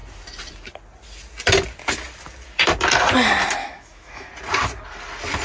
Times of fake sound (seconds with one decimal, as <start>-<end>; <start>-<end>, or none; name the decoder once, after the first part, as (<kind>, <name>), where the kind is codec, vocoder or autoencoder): 3.6-4.3 (autoencoder, DAC-VAE)